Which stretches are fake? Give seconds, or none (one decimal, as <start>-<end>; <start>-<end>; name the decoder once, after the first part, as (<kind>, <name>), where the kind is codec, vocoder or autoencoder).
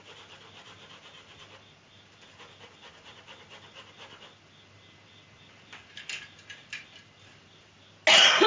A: none